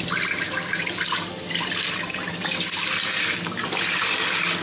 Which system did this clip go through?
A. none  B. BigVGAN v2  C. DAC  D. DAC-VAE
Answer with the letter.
A